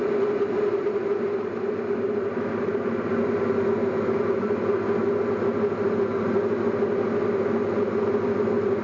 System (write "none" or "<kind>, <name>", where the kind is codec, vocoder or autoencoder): none